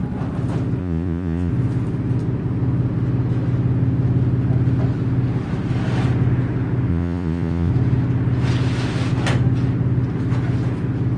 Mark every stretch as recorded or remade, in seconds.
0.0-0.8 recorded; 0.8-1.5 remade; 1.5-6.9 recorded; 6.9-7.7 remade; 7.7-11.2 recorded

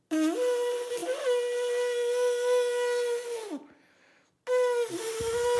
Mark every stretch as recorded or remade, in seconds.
0.0-5.6 recorded

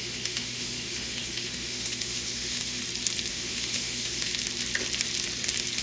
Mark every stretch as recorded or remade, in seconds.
0.0-2.8 remade; 2.8-3.3 recorded; 3.3-4.3 remade; 4.3-5.8 recorded

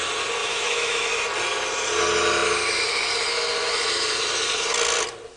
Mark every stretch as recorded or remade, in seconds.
0.0-0.4 recorded; 0.4-1.1 remade; 1.1-5.4 recorded

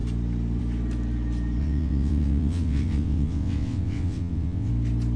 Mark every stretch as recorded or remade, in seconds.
0.0-1.6 recorded; 1.6-4.7 remade; 4.7-5.2 recorded

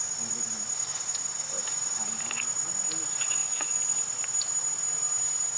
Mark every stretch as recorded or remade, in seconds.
0.0-3.4 recorded; 3.4-3.9 remade; 3.9-5.6 recorded